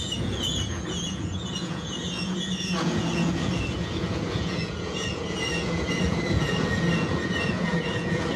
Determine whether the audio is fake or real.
fake